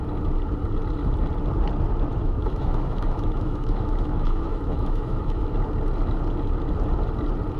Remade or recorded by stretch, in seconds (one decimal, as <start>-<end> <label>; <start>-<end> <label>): 0.0-2.1 recorded; 2.1-5.4 remade; 5.4-7.6 recorded

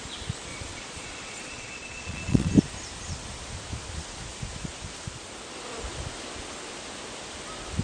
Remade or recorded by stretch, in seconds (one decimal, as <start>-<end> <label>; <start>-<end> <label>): 0.0-0.5 recorded; 0.5-2.5 remade; 2.5-7.8 recorded